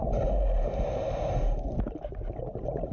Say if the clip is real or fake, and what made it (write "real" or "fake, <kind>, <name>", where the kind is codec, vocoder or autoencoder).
real